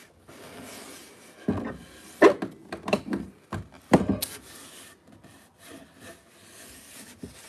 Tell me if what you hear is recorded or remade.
recorded